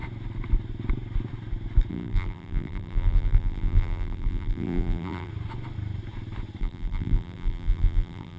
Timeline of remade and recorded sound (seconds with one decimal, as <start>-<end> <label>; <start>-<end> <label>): 0.0-1.9 recorded; 1.9-5.3 remade; 5.3-6.6 recorded; 6.6-8.4 remade